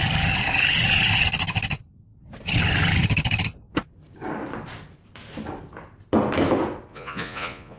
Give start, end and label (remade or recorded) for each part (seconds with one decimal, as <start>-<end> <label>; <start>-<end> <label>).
0.0-6.9 recorded; 6.9-7.8 remade

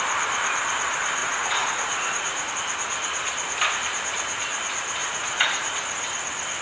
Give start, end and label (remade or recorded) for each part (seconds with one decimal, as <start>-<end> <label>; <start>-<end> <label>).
0.0-1.2 recorded; 1.2-2.5 remade; 2.5-5.0 recorded; 5.0-5.7 remade; 5.7-6.6 recorded